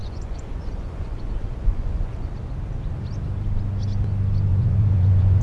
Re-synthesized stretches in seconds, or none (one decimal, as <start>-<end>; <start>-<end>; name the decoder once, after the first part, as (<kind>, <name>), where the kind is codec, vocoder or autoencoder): 0.0-2.3 (vocoder, Vocos); 4.5-5.4